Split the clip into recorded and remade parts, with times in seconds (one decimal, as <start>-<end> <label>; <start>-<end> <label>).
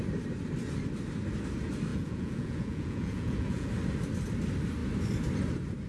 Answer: 0.0-1.9 recorded; 1.9-3.7 remade; 3.7-5.9 recorded